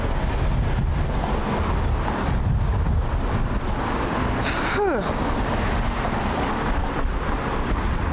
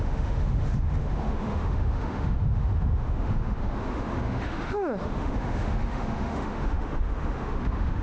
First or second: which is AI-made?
second